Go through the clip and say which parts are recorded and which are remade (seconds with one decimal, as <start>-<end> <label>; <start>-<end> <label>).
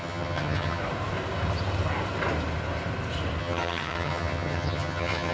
0.0-0.8 remade; 0.8-3.4 recorded; 3.4-5.3 remade